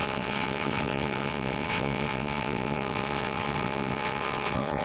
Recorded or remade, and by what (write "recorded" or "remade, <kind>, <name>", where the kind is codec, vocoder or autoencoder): remade, vocoder, WaveNeXt